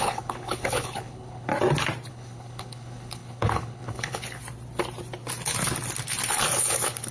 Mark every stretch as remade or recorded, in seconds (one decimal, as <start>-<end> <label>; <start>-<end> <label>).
0.0-1.5 remade; 1.5-2.1 recorded; 2.1-4.4 remade; 4.4-6.3 recorded; 6.3-7.1 remade

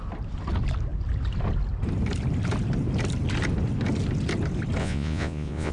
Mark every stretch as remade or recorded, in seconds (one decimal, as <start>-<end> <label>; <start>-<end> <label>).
0.0-4.8 recorded; 4.8-5.7 remade

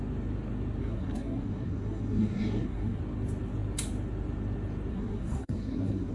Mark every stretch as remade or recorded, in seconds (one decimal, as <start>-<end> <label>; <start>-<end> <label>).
0.0-0.8 recorded; 0.8-3.0 remade; 3.0-4.9 recorded; 4.9-6.1 remade

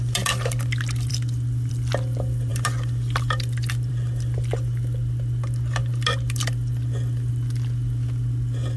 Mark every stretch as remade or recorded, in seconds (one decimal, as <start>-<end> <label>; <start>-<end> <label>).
0.0-8.8 recorded

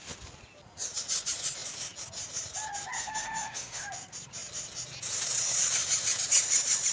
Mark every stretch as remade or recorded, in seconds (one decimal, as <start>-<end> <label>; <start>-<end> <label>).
0.0-3.0 recorded; 3.0-3.9 remade; 3.9-6.9 recorded

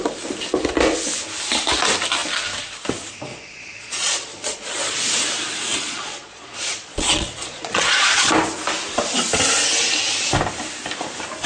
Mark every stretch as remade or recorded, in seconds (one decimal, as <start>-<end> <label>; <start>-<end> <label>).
0.0-3.3 recorded; 3.3-4.9 remade; 4.9-5.7 recorded; 5.7-8.3 remade; 8.3-11.5 recorded